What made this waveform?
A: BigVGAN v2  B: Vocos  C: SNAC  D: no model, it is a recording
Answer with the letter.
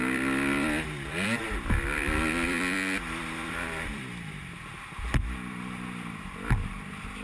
A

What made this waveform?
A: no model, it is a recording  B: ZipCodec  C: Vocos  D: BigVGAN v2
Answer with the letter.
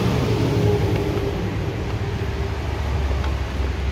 A